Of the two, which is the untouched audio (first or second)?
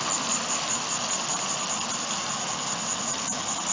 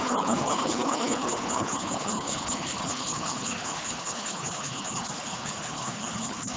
first